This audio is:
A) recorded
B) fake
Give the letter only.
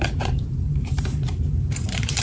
B